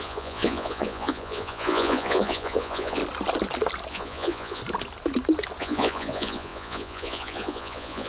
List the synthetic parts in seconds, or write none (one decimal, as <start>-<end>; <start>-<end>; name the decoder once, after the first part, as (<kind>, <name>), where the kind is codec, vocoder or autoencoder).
0.0-3.0 (vocoder, Vocos); 3.9-4.6; 5.6-8.1